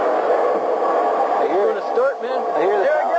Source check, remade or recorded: recorded